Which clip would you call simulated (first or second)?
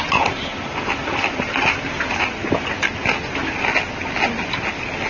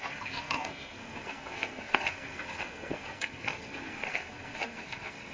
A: second